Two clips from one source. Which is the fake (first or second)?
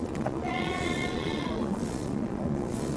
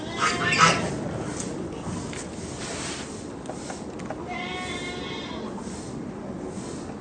first